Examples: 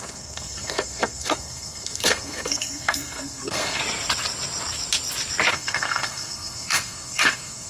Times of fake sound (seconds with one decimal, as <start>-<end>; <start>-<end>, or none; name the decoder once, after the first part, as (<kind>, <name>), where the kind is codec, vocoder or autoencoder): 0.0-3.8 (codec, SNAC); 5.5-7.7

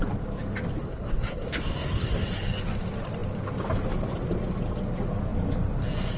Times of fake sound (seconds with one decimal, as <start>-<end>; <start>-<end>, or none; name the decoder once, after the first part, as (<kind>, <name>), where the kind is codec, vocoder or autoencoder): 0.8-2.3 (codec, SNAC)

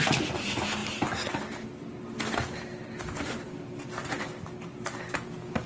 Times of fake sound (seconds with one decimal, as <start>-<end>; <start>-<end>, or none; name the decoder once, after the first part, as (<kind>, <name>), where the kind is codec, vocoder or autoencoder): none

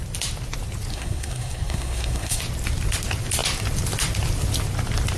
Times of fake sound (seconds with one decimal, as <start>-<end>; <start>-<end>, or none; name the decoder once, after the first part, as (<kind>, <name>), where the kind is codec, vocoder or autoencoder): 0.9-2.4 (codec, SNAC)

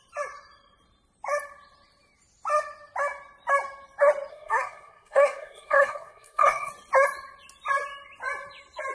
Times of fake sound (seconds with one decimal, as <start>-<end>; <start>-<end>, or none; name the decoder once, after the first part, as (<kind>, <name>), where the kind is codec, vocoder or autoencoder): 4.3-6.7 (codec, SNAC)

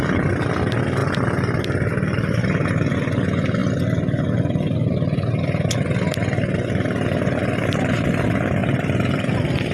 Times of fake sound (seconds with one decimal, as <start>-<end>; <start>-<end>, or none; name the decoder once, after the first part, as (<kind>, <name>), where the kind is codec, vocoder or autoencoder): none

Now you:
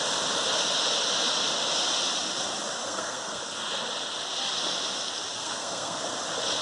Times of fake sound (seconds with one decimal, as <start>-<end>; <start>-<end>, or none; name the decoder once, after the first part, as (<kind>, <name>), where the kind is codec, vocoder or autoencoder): 2.8-3.4 (codec, SNAC); 5.4-6.0